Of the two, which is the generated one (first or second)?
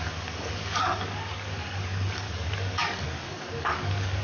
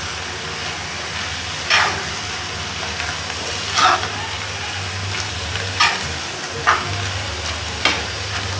first